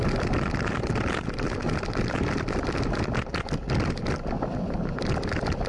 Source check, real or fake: real